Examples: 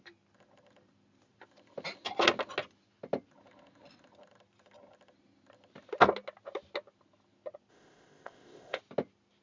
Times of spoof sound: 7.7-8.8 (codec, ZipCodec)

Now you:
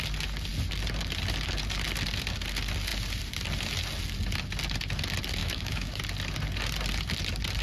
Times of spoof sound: 5.4-6.0 (autoencoder, DAC-VAE)